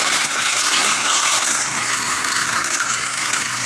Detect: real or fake fake